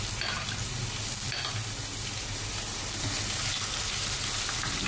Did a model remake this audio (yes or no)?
no